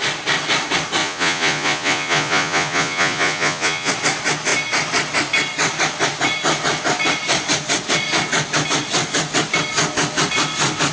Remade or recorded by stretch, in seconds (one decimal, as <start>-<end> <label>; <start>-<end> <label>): 0.0-1.0 recorded; 1.0-3.9 remade; 3.9-10.9 recorded